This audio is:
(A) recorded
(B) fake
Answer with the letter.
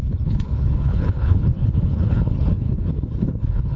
B